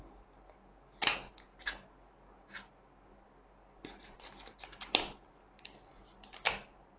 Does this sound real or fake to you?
real